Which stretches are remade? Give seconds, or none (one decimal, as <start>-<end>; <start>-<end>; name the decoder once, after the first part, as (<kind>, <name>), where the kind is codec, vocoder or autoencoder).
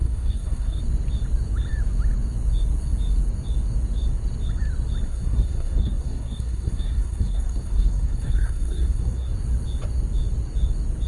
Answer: 0.0-0.8 (codec, SNAC); 5.1-9.3